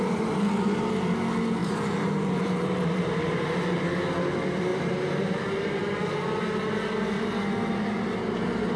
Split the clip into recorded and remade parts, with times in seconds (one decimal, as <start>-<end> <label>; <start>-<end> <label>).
0.0-1.6 recorded; 1.6-3.6 remade; 3.6-4.7 recorded; 4.7-5.8 remade; 5.8-8.8 recorded